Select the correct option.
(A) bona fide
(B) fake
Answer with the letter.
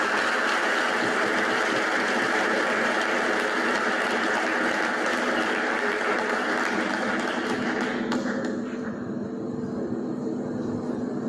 A